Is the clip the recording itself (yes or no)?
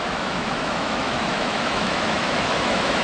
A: no